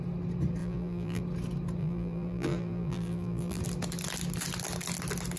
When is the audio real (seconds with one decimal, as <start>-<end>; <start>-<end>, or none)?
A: 0.0-0.6; 1.2-1.8; 3.6-5.4